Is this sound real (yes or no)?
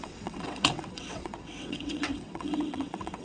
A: no